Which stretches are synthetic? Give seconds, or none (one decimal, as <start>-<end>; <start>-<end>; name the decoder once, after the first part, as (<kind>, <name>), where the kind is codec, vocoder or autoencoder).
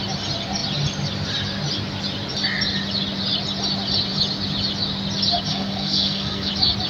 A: 5.5-6.5 (codec, SNAC)